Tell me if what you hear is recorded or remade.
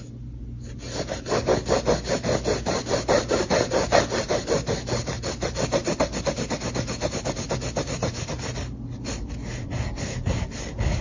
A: recorded